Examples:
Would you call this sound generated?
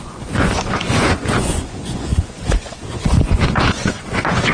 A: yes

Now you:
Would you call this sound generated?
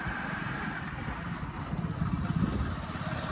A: no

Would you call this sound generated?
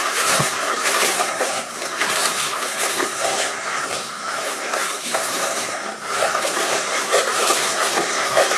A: yes